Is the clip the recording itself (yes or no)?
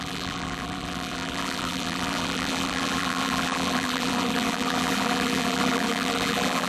no